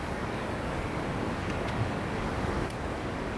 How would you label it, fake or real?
fake